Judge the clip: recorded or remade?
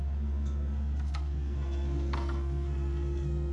remade